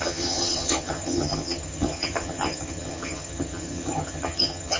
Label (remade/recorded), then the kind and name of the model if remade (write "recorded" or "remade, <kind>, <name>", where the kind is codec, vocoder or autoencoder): remade, vocoder, HiFi-GAN